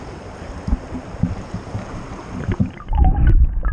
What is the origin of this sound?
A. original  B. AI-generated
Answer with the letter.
A